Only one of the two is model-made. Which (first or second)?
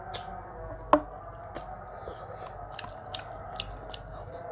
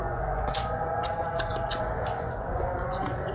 second